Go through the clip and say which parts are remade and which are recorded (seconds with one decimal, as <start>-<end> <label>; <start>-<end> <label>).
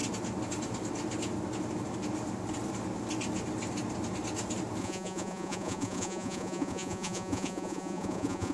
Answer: 0.0-4.8 recorded; 4.8-8.5 remade